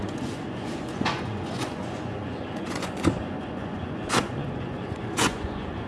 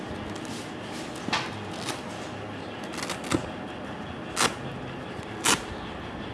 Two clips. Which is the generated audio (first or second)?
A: first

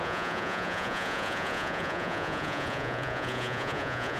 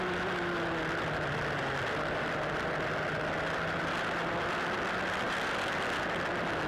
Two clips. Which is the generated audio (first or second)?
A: first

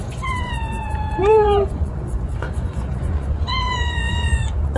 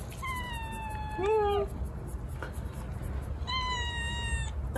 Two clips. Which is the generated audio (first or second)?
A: first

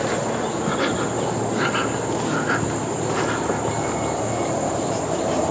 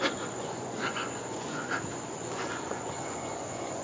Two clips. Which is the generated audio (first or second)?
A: second